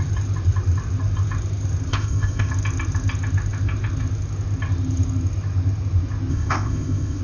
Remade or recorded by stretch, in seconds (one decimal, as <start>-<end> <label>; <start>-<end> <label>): 0.0-1.9 recorded; 1.9-2.5 remade; 2.5-6.3 recorded; 6.3-7.2 remade